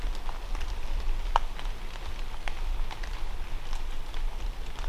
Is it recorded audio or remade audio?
recorded